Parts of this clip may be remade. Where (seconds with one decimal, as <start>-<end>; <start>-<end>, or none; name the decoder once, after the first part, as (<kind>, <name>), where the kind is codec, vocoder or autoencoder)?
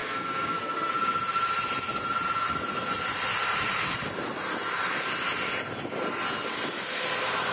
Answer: 0.0-0.9 (codec, SNAC)